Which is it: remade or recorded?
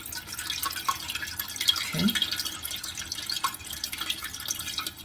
recorded